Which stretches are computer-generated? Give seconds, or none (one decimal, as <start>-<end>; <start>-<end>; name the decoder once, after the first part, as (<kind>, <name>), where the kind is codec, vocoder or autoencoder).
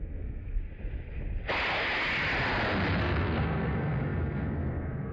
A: 0.0-0.6 (codec, SNAC); 3.0-5.1